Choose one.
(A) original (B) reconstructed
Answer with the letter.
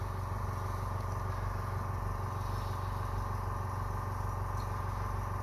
A